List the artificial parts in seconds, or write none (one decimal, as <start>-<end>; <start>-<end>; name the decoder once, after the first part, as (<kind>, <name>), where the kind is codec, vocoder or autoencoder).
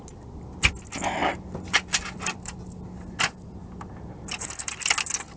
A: 1.2-3.2 (vocoder, BigVGAN v2)